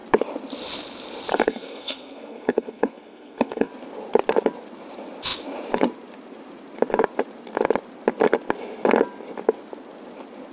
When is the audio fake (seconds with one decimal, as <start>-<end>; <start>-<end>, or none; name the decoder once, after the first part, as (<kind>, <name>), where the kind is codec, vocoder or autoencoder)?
1.3-3.7 (codec, SNAC)